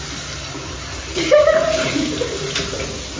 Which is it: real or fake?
real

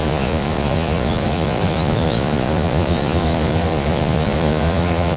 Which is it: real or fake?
fake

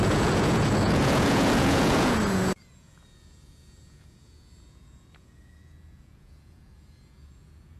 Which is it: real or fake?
fake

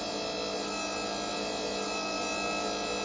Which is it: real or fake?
real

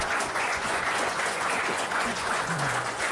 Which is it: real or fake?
fake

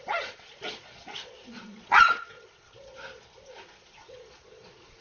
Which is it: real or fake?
fake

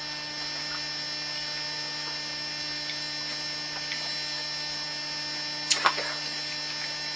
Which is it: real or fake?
real